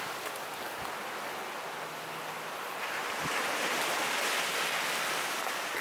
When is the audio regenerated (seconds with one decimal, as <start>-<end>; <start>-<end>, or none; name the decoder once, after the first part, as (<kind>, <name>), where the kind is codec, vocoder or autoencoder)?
3.0-4.0 (vocoder, BigVGAN v2)